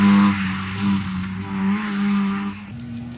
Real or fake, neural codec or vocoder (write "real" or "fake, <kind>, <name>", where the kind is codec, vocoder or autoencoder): real